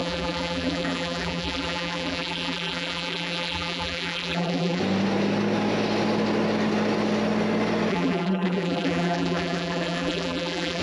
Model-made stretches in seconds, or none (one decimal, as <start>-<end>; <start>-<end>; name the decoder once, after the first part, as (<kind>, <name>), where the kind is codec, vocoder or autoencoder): 0.0-4.8 (vocoder, BigVGAN v2); 7.9-10.8